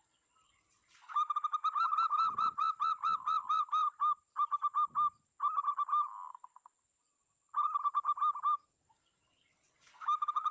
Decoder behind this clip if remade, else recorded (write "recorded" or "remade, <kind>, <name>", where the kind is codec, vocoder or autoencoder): recorded